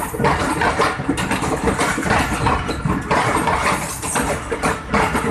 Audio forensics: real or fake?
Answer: real